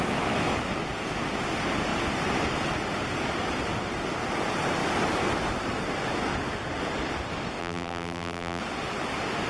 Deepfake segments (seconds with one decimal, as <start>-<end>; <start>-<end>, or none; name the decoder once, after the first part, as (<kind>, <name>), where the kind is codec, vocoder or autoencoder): 7.6-8.6 (vocoder, BigVGAN v2)

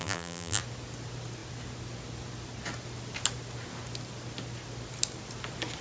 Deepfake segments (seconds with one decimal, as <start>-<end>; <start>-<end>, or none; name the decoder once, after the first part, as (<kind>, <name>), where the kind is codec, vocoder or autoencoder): 0.0-0.6 (vocoder, BigVGAN v2)

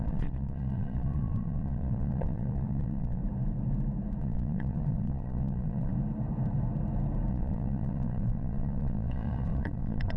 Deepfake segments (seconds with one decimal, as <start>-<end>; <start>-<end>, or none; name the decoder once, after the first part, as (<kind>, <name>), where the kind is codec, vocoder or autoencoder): 0.0-3.2 (vocoder, Vocos); 4.2-5.9; 7.3-10.2

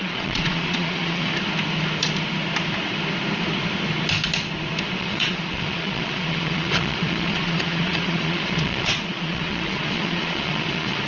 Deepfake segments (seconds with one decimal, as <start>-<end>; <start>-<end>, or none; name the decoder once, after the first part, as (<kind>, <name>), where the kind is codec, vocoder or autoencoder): 0.0-1.3 (vocoder, Vocos); 5.0-11.1

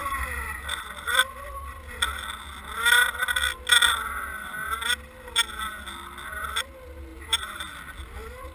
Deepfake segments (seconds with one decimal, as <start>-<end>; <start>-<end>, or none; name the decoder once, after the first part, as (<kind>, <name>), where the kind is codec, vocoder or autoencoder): 7.1-7.7 (vocoder, BigVGAN v2)